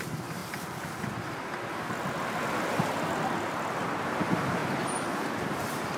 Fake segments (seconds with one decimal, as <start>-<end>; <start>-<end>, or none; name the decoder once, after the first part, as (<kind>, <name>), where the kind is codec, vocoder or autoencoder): 0.0-0.4 (vocoder, BigVGAN v2); 4.0-4.6; 5.5-6.0